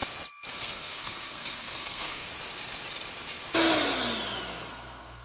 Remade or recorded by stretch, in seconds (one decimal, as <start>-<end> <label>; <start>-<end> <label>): 0.0-0.5 recorded; 0.5-2.3 remade; 2.3-4.7 recorded; 4.7-5.2 remade